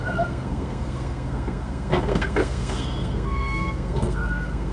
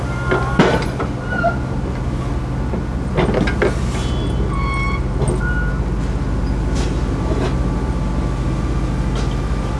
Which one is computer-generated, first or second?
first